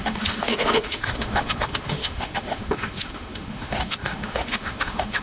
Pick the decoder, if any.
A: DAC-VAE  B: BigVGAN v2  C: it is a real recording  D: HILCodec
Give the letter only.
A